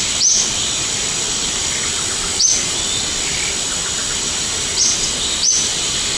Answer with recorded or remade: recorded